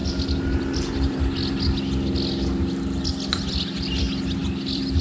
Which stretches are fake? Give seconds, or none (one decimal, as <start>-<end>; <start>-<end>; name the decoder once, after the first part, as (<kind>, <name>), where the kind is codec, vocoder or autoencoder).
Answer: 0.0-1.2 (vocoder, BigVGAN v2); 4.4-5.0